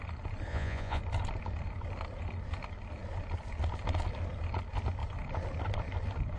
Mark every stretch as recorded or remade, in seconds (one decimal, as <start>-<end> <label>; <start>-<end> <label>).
0.0-0.5 recorded; 0.5-1.0 remade; 1.0-6.4 recorded